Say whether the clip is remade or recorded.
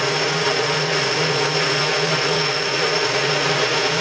remade